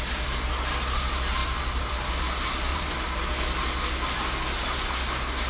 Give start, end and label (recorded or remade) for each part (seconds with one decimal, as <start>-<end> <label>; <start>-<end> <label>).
0.0-1.4 recorded; 1.4-2.2 remade; 2.2-2.7 recorded; 2.7-3.2 remade; 3.2-5.5 recorded

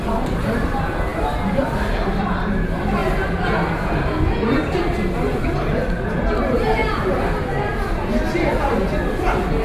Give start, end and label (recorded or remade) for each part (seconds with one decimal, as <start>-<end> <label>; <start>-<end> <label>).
0.0-9.6 recorded

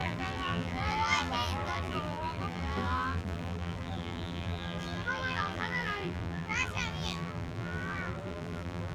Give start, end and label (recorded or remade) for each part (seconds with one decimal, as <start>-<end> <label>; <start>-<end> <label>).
0.0-8.9 remade